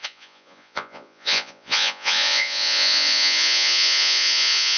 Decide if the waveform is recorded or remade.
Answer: remade